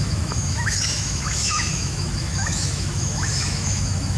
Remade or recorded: remade